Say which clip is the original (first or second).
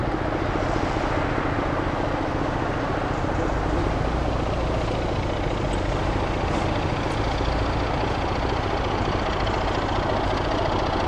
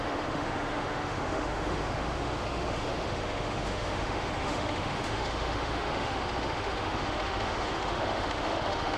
first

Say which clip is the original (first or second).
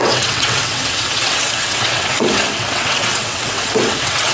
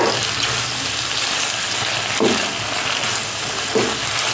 second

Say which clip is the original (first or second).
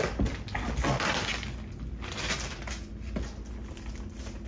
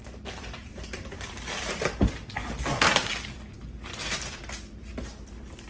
first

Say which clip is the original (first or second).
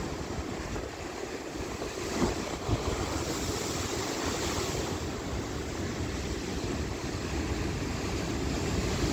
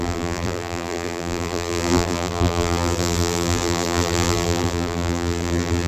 first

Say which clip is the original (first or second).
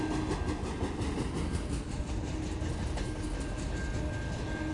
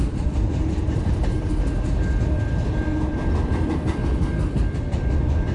first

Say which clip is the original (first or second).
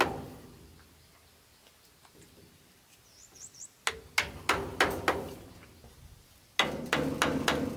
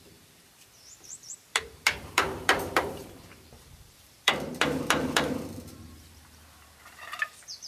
first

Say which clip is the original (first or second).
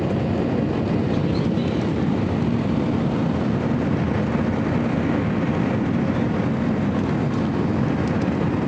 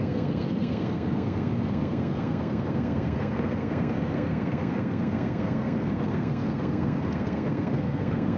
first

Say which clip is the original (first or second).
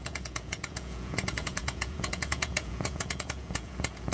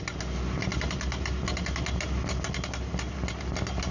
second